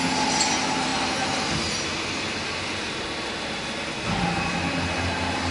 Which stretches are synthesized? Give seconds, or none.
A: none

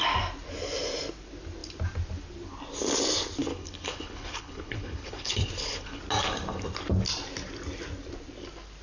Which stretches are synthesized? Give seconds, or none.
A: 3.5-6.0 (codec, HILCodec)

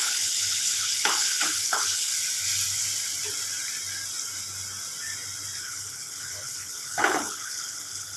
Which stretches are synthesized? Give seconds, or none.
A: 0.0-2.1 (codec, HILCodec); 5.6-8.2

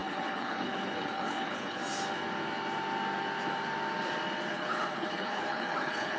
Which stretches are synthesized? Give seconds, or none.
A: 0.0-1.8 (codec, HILCodec); 4.5-6.2

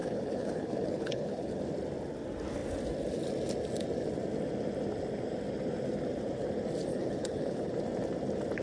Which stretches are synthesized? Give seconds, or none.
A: 0.0-1.6 (codec, HILCodec); 6.9-7.7

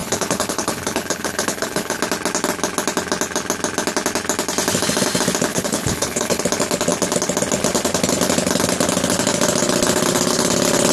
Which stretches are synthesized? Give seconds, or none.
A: 0.0-2.0 (codec, HILCodec); 5.5-6.4

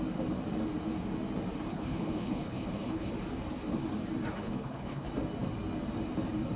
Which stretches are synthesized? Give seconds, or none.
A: 1.7-3.1 (codec, HILCodec); 4.4-5.1

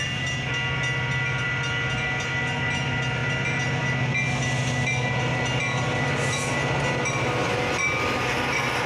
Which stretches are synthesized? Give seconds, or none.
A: none